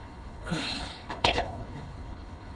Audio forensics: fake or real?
fake